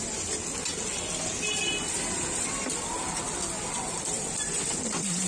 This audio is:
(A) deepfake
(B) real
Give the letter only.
B